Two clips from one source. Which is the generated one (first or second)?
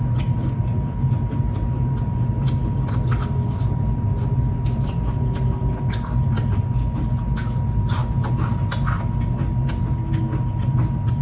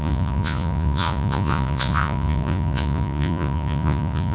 second